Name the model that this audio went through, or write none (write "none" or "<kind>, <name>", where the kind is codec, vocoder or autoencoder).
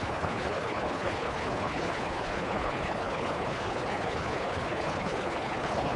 codec, HILCodec